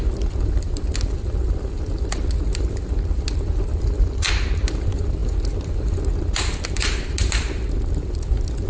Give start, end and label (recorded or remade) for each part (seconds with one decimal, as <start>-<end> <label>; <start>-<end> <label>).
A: 0.0-8.7 recorded